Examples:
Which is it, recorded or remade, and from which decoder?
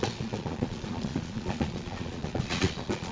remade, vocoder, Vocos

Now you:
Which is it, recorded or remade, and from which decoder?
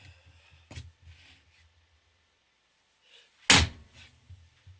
recorded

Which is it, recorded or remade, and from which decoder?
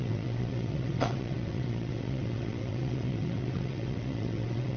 remade, vocoder, WaveNeXt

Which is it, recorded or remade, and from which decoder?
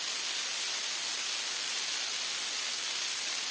recorded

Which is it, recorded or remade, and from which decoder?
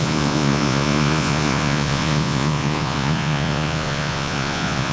remade, vocoder, Vocos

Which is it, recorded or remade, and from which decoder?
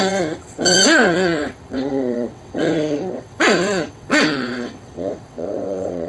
remade, vocoder, WaveNeXt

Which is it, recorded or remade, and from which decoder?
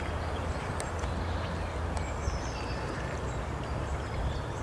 recorded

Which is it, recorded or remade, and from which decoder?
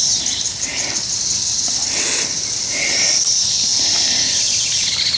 recorded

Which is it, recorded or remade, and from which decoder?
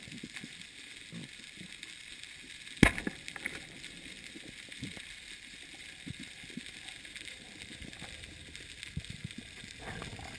recorded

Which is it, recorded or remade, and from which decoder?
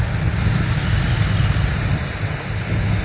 recorded